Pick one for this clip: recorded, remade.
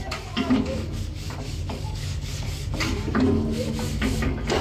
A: remade